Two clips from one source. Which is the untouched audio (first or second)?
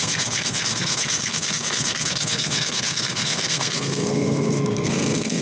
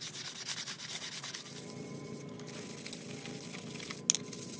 second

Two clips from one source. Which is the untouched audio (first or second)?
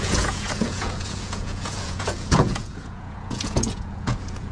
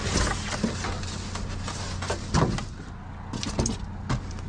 second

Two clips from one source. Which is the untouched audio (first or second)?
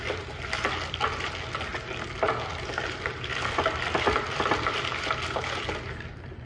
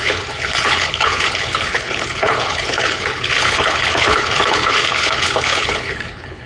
first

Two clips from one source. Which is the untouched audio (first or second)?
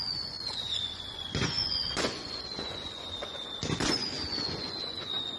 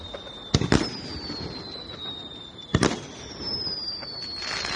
second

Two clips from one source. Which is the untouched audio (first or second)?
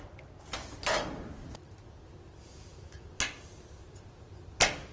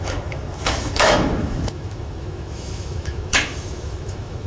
first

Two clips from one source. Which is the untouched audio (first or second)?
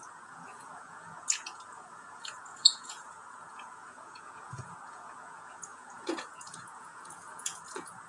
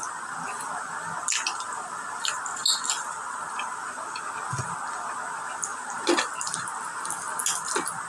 second